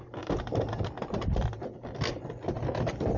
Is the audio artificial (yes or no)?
no